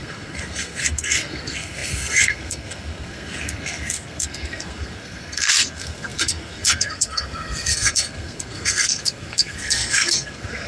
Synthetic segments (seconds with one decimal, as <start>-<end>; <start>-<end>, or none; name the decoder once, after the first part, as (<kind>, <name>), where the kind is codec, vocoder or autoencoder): 0.0-10.7 (codec, SNAC)